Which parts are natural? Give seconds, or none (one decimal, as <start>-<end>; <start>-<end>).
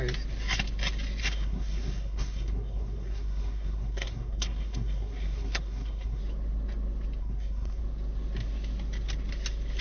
0.0-1.2; 6.2-7.2; 7.8-9.8